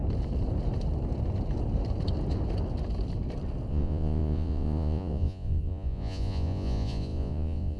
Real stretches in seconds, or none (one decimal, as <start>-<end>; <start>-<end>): 0.0-3.7